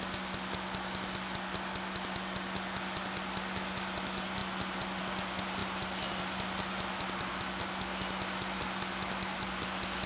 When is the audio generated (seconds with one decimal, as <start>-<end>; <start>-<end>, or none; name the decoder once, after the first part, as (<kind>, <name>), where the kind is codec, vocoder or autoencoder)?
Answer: none

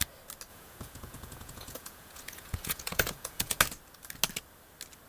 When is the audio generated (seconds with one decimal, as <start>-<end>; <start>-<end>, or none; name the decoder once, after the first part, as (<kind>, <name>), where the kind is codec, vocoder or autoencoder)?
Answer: 0.5-3.6 (vocoder, Vocos)

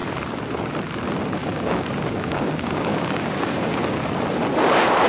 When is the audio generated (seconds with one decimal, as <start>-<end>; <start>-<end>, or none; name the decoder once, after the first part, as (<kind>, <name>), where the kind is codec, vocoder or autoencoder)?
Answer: 1.4-3.7 (codec, DAC)

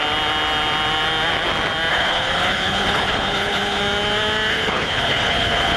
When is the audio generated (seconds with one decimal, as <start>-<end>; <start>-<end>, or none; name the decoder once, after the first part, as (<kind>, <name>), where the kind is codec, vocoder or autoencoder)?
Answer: 1.9-3.8 (codec, HILCodec); 4.5-5.8

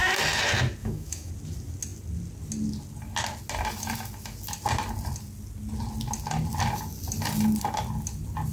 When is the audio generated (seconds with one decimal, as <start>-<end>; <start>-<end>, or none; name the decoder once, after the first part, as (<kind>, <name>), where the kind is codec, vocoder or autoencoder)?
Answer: 0.8-1.3 (autoencoder, DAC-VAE)

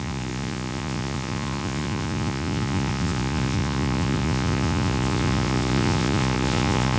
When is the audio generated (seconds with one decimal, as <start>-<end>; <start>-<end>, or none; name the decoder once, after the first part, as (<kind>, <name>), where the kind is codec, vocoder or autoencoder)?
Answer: 0.0-7.0 (vocoder, Vocos)

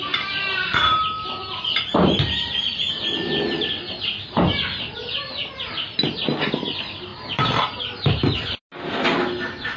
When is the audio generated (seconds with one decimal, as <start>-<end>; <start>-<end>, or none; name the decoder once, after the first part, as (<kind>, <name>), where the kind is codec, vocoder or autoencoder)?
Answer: none